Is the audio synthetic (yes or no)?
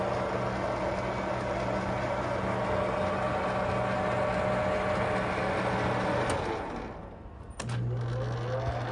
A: no